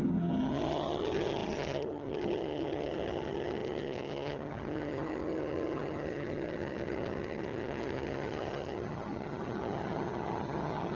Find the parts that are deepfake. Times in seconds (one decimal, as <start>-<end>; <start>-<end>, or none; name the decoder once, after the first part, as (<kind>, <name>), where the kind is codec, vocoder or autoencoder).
0.0-10.9 (vocoder, HiFi-GAN)